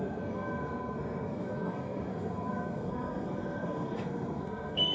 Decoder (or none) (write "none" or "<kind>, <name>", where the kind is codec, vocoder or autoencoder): codec, SNAC